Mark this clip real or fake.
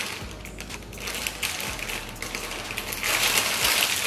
real